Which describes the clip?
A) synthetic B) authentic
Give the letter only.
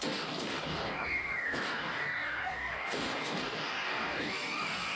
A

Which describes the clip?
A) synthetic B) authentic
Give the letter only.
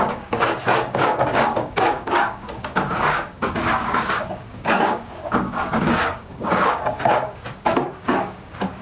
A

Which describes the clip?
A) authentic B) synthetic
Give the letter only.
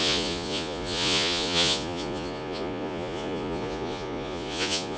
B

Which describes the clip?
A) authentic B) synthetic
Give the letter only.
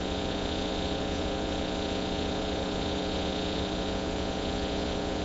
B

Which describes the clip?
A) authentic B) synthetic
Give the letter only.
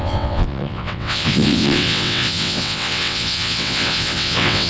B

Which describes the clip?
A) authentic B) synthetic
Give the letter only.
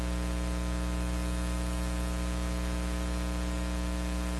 A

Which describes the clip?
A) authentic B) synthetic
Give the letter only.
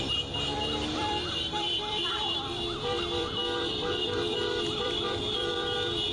B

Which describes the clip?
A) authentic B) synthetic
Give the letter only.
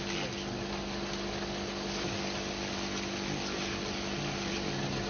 A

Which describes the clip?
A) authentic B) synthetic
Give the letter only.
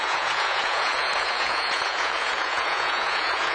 B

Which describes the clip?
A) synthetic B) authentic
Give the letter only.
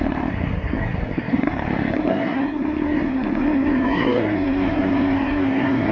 A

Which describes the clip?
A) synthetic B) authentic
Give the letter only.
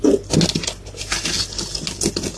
B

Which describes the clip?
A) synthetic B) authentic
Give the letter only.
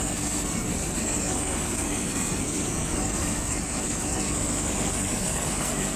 A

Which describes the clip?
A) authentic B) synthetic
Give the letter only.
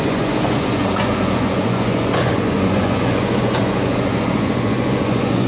B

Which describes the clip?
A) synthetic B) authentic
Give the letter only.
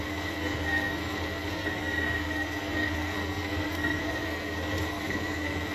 A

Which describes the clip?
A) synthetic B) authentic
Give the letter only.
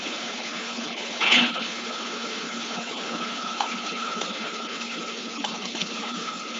A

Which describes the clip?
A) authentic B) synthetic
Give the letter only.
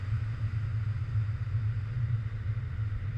A